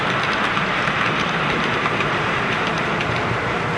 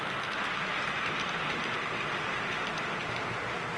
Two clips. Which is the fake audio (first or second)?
first